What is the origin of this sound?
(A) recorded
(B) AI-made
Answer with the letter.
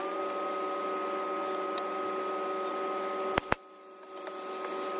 A